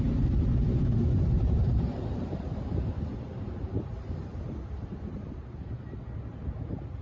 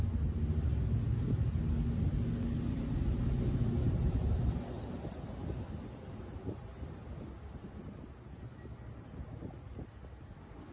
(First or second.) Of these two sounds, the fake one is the first